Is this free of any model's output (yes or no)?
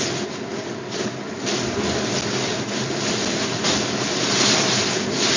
yes